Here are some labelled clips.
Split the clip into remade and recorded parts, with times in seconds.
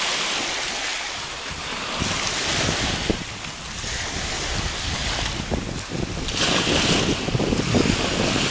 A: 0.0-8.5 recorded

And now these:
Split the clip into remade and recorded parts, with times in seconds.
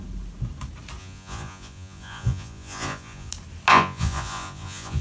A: 0.0-1.0 recorded; 1.0-3.3 remade; 3.3-3.7 recorded; 3.7-5.0 remade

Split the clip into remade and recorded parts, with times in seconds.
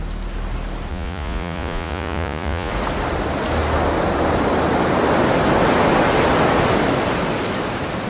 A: 0.0-0.9 recorded; 0.9-2.7 remade; 2.7-8.1 recorded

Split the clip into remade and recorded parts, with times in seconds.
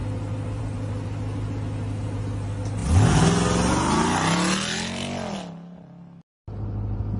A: 0.0-7.2 recorded